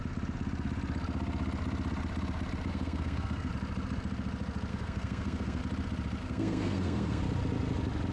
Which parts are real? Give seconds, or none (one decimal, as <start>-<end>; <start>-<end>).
0.0-2.7; 3.5-4.7; 5.6-6.2; 7.2-8.1